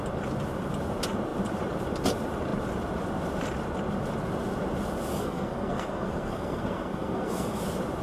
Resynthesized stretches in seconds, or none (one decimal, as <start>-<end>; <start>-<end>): 5.1-7.6